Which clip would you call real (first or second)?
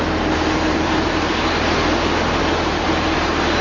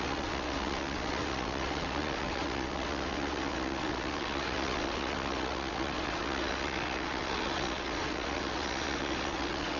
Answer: first